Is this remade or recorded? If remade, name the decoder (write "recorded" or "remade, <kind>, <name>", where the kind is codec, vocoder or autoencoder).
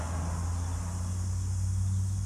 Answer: recorded